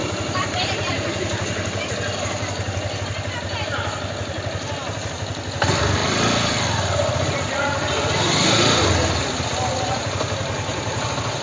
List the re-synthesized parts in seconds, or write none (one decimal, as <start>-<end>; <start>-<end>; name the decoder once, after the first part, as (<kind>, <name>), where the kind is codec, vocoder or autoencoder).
0.0-1.9 (vocoder, BigVGAN v2)